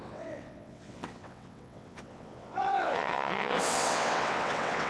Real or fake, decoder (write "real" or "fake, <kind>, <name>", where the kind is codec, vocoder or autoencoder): fake, vocoder, WaveNeXt